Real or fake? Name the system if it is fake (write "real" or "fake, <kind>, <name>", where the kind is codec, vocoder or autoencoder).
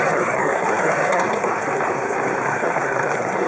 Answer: fake, codec, SNAC